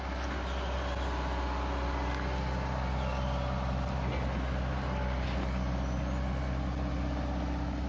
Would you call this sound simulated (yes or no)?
no